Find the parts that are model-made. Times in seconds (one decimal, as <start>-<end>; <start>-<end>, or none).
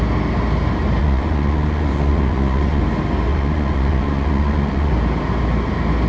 1.0-2.8; 3.3-4.9